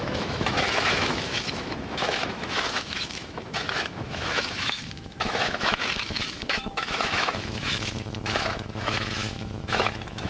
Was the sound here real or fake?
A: fake